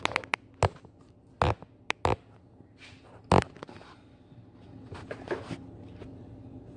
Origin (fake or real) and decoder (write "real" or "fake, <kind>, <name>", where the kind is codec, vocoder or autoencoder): real